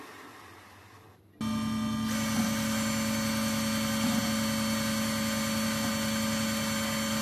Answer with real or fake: real